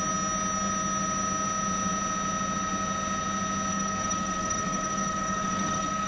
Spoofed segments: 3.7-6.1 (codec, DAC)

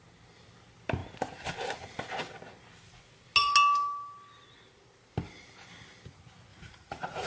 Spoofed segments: 6.5-7.3 (vocoder, Vocos)

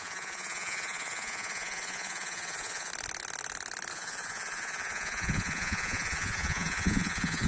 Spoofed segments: 0.0-2.9 (vocoder, Vocos); 3.9-7.5

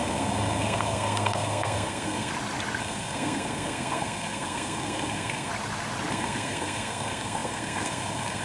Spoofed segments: 0.0-2.3 (codec, SNAC); 2.8-5.5; 6.1-8.4

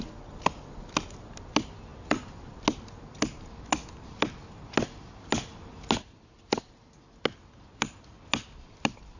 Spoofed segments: none

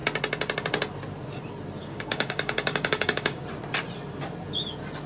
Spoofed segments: 1.8-3.4 (codec, DAC)